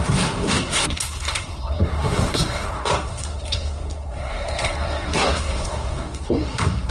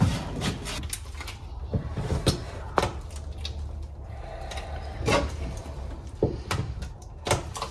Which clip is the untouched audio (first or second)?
second